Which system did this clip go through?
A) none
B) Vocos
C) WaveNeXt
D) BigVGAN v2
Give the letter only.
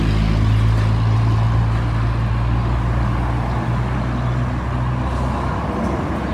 A